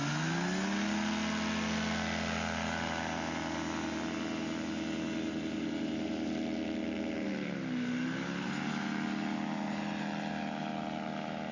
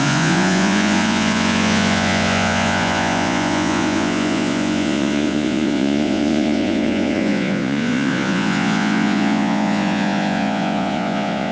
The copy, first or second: second